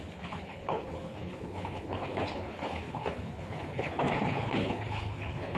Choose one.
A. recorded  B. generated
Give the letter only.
B